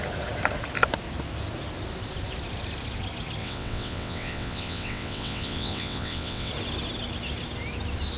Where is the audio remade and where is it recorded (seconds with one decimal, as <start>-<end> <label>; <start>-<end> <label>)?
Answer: 0.0-3.4 recorded; 3.4-6.5 remade; 6.5-8.2 recorded